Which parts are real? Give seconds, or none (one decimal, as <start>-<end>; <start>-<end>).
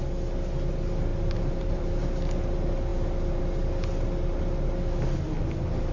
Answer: 0.0-1.1; 2.0-5.9